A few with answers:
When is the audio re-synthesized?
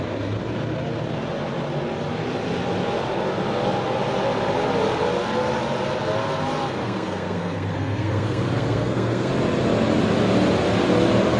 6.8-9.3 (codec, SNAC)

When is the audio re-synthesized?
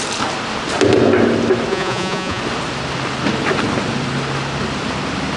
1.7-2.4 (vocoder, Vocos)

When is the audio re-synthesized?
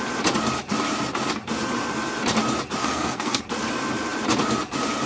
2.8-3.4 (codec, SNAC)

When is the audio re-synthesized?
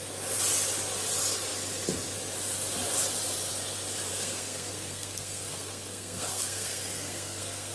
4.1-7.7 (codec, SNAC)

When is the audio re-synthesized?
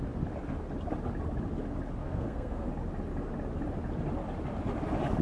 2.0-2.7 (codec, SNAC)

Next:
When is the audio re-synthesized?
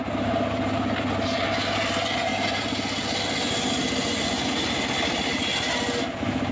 none